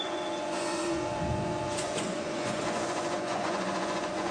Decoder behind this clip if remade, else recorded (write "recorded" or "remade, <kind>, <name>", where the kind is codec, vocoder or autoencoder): remade, vocoder, Vocos